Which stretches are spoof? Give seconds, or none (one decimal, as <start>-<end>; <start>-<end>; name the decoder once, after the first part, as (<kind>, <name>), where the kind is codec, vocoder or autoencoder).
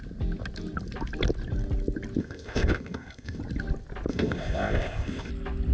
2.2-3.4 (codec, ZipCodec); 4.1-5.3